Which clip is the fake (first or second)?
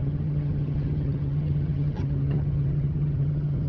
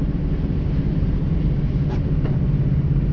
first